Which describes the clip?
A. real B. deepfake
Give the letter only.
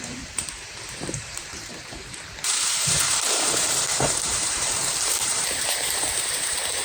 B